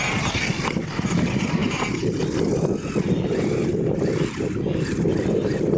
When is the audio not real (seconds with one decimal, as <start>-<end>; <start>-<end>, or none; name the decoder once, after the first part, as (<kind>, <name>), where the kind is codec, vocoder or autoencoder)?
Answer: none